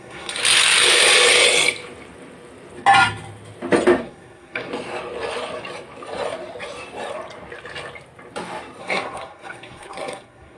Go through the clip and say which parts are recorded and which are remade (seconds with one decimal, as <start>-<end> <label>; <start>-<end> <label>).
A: 0.0-0.4 remade; 0.4-4.0 recorded; 4.0-4.7 remade; 4.7-8.8 recorded; 8.8-10.6 remade